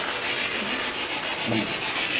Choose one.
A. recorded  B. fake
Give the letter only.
A